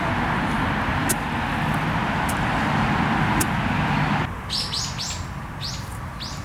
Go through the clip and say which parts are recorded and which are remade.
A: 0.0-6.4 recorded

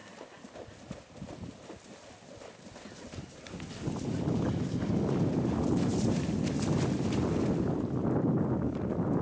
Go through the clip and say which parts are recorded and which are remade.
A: 0.0-5.9 recorded; 5.9-6.5 remade; 6.5-9.2 recorded

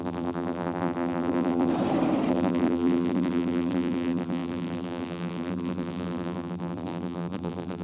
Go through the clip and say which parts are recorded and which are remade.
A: 0.0-1.7 remade; 1.7-2.3 recorded; 2.3-7.8 remade

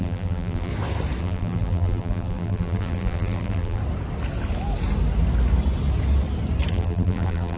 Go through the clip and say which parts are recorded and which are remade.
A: 0.0-0.7 remade; 0.7-1.2 recorded; 1.2-3.8 remade; 3.8-6.7 recorded; 6.7-7.6 remade

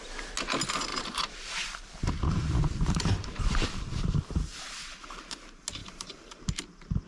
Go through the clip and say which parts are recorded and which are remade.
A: 0.0-0.9 recorded; 0.9-5.2 remade; 5.2-5.8 recorded; 5.8-6.4 remade; 6.4-7.1 recorded

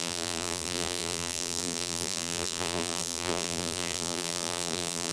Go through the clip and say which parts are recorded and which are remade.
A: 0.0-5.1 remade

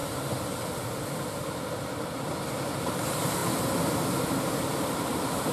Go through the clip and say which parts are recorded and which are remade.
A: 0.0-1.2 remade; 1.2-5.5 recorded

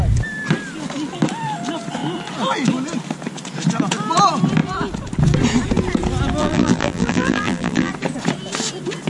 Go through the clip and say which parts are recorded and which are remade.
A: 0.0-6.4 recorded; 6.4-7.9 remade; 7.9-9.1 recorded